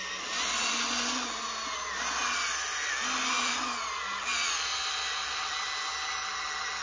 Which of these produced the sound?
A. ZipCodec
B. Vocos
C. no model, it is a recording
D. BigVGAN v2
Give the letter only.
C